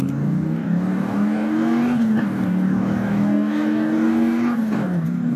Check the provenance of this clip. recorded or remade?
remade